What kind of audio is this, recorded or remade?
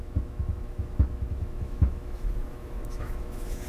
remade